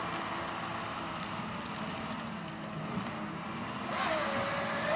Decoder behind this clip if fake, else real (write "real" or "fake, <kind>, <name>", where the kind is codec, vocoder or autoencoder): real